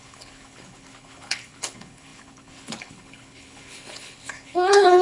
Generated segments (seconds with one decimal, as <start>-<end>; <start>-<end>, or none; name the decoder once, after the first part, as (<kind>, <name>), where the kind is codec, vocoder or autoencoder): 0.0-5.0 (codec, HILCodec)

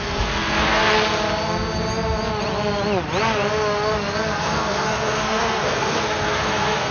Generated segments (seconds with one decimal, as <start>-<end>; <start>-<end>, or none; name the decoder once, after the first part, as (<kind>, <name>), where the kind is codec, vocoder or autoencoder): 0.0-0.8 (codec, SNAC); 4.4-6.9

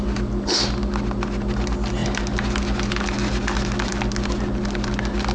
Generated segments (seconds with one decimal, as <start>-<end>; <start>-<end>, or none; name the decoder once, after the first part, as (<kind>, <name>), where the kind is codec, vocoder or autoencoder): none